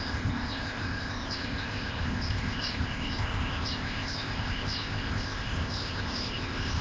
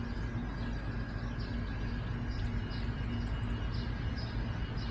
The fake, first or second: first